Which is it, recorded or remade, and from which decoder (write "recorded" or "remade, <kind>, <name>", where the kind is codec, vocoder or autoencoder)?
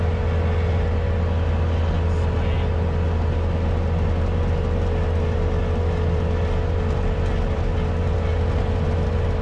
recorded